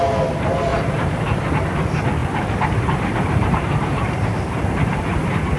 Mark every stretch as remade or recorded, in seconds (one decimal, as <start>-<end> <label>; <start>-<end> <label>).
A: 0.0-0.7 recorded; 0.7-1.6 remade; 1.6-2.2 recorded; 2.2-5.6 remade